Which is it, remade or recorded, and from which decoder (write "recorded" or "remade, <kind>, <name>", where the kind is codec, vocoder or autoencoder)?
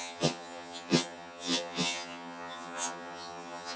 remade, vocoder, HiFi-GAN